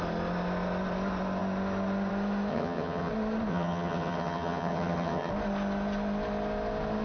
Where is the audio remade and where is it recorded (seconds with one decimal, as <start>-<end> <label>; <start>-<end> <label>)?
0.0-2.5 recorded; 2.5-3.1 remade; 3.1-3.5 recorded; 3.5-5.3 remade; 5.3-7.0 recorded